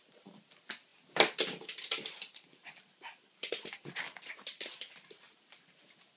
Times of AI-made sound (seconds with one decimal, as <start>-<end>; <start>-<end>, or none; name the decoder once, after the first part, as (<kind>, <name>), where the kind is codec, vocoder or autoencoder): none